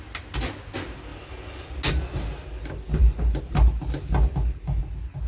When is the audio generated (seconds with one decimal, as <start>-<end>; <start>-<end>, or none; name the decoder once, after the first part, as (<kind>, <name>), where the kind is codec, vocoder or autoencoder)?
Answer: none